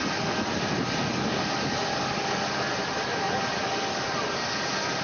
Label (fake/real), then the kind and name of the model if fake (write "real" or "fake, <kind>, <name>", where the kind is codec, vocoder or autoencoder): real